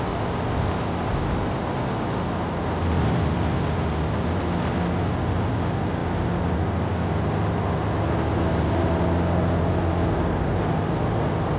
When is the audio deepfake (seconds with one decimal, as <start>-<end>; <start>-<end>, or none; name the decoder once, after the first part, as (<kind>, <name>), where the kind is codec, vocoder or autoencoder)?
none